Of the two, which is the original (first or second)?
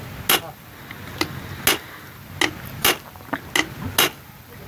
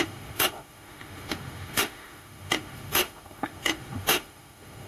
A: first